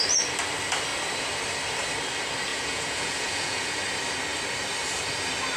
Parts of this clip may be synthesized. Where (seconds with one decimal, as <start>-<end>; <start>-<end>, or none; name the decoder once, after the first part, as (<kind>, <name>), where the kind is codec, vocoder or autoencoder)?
2.5-3.8 (vocoder, Vocos)